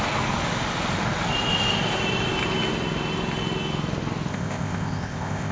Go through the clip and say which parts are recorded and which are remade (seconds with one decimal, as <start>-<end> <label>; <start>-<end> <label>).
0.0-4.3 recorded; 4.3-5.5 remade